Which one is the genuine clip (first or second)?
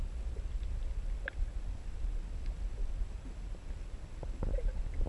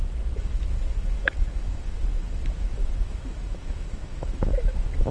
first